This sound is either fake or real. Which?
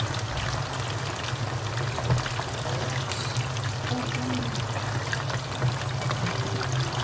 real